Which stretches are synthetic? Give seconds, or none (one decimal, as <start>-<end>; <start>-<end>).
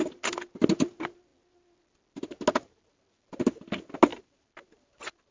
4.1-5.3